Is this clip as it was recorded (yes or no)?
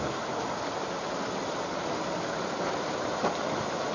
yes